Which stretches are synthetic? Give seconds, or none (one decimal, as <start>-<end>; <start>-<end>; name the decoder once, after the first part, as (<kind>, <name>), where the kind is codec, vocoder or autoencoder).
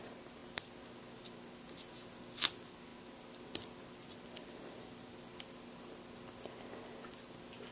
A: none